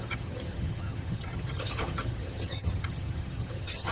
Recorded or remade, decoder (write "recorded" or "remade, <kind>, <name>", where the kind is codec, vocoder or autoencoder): remade, vocoder, HiFi-GAN